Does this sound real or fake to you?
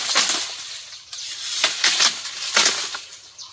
real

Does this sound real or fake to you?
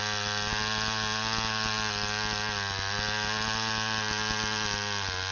real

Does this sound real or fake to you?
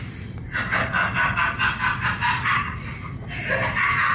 real